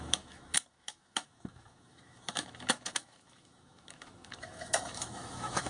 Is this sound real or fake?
fake